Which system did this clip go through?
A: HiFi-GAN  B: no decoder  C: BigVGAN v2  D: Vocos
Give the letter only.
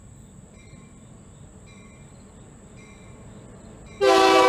B